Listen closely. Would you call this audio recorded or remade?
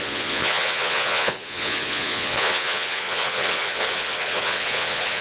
remade